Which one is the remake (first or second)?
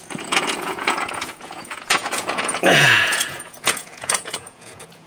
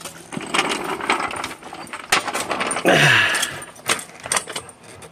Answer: first